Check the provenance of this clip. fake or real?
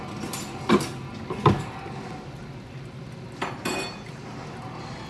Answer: real